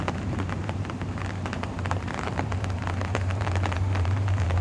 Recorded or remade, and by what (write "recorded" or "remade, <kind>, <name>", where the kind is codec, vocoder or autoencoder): remade, vocoder, BigVGAN v2